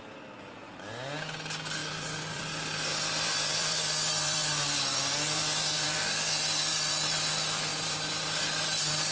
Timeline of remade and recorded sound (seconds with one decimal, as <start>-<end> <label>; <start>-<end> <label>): 0.0-1.8 recorded; 1.8-2.4 remade; 2.4-2.9 recorded; 2.9-7.1 remade; 7.1-7.7 recorded; 7.7-8.4 remade; 8.4-9.1 recorded